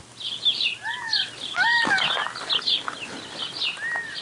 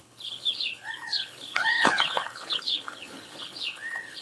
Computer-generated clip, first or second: second